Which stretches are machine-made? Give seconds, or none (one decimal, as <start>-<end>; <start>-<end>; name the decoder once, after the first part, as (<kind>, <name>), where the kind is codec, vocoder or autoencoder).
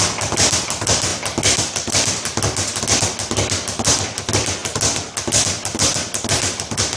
none